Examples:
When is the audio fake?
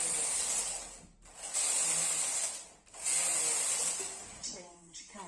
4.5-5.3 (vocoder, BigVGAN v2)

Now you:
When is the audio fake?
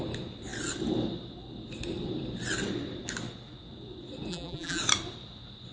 4.3-4.8 (vocoder, BigVGAN v2)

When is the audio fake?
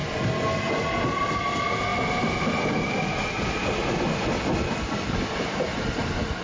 none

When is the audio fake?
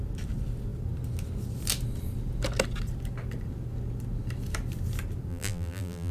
5.3-6.1 (vocoder, BigVGAN v2)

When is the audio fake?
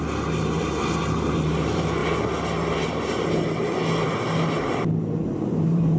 0.6-2.0 (vocoder, BigVGAN v2); 5.6-6.0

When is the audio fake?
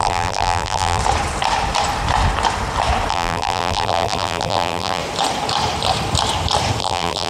0.0-1.0 (vocoder, BigVGAN v2); 3.1-5.0; 6.8-7.3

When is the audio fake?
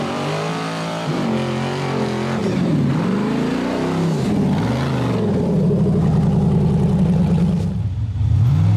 2.4-2.9 (vocoder, BigVGAN v2)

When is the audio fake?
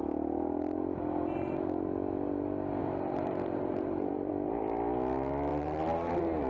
2.8-4.3 (vocoder, BigVGAN v2); 5.5-6.1